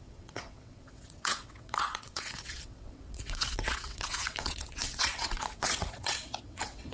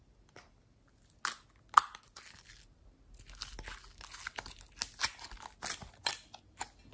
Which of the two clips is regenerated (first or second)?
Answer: first